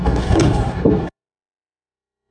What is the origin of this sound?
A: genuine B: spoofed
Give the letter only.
B